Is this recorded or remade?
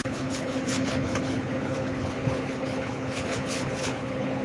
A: remade